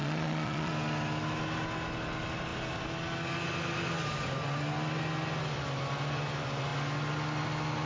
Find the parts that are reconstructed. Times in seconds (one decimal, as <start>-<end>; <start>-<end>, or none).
0.0-0.7